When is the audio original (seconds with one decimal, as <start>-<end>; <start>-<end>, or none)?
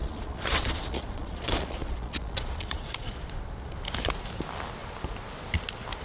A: 3.1-6.0